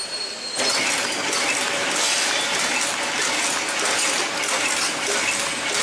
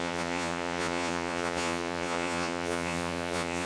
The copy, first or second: second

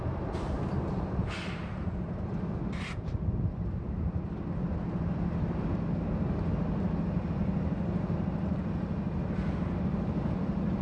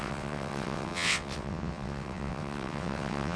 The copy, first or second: second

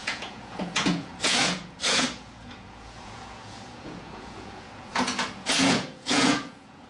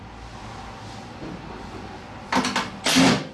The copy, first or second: first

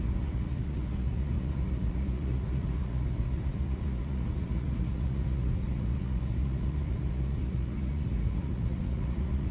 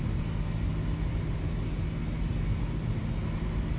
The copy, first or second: first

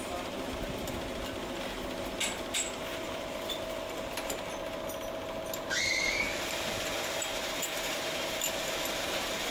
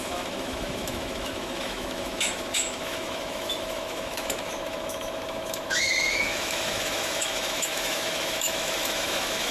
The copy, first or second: second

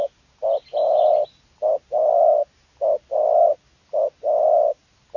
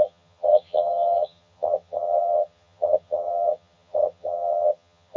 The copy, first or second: second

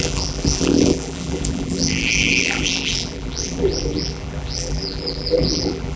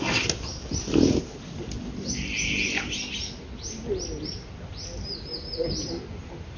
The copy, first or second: first